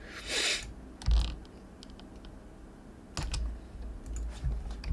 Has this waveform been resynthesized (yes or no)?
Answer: no